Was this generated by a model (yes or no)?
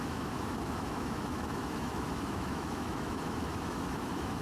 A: yes